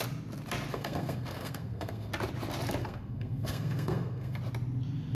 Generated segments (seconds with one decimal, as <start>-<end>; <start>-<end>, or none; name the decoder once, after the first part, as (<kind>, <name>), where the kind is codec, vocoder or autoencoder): 0.7-2.1 (codec, SNAC); 2.8-4.4